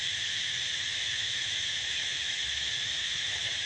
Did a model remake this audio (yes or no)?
yes